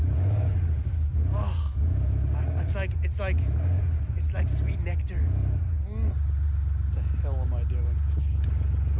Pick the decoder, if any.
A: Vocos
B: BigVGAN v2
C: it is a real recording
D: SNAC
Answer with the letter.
C